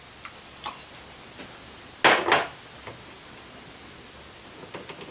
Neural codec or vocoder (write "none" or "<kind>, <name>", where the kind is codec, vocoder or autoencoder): none